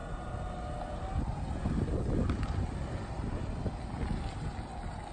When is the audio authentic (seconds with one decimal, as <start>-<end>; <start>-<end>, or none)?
0.0-5.1